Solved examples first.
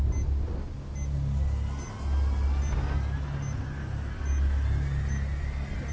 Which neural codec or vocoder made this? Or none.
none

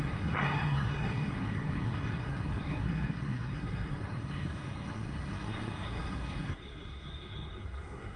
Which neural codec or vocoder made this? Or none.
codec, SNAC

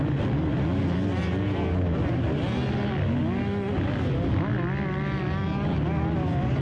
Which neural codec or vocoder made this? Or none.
none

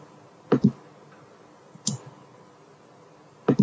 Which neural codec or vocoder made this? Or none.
none